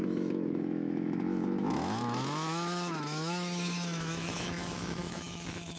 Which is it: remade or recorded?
remade